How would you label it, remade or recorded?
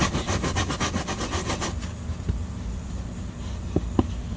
recorded